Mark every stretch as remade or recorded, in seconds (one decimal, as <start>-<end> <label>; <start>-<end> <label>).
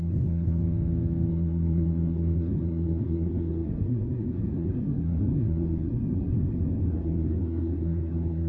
0.0-0.6 remade; 0.6-1.3 recorded; 1.3-8.5 remade